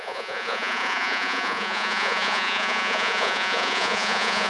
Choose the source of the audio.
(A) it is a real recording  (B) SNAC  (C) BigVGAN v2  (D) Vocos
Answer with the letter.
D